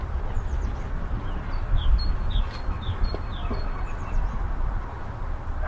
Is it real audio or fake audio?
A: real